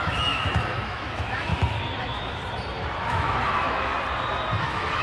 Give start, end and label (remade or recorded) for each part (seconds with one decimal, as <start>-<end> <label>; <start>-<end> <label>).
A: 0.0-1.5 remade; 1.5-2.0 recorded; 2.0-2.4 remade; 2.4-3.0 recorded; 3.0-3.9 remade; 3.9-4.6 recorded; 4.6-5.0 remade